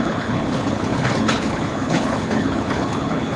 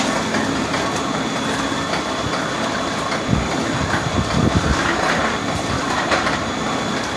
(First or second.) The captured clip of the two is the second